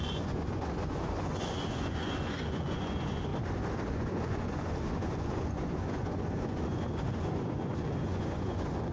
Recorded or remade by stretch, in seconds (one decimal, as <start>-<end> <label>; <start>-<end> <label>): 0.0-3.3 remade; 3.3-3.9 recorded; 3.9-8.9 remade